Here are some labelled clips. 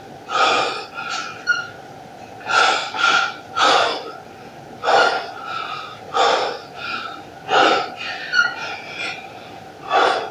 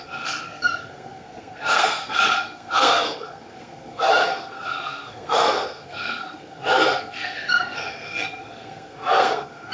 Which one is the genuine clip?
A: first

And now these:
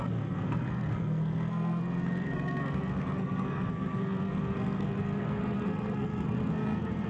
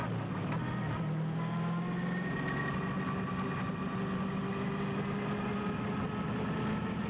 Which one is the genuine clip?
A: second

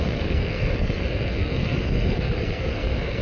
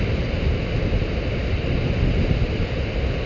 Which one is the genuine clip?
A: second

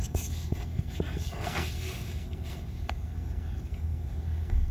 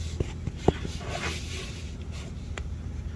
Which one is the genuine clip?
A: second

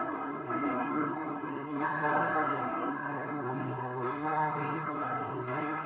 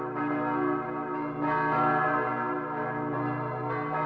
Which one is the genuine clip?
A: second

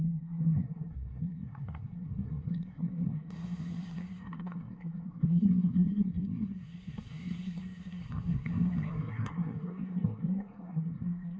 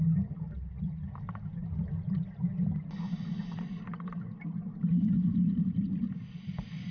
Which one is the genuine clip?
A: second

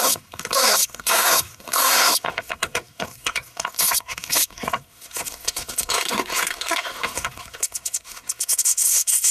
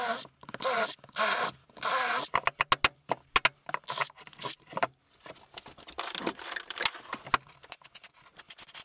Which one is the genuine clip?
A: second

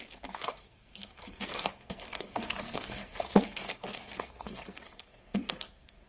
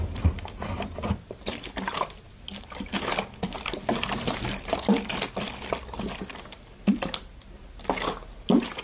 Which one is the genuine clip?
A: second